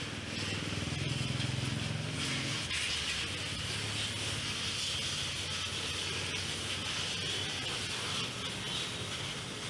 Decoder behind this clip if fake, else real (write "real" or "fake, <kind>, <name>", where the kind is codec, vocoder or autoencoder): real